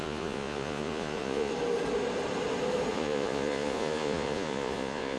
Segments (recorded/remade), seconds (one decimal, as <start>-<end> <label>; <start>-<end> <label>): 0.0-1.5 remade; 1.5-2.9 recorded; 2.9-5.2 remade